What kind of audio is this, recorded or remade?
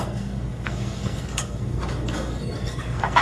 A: remade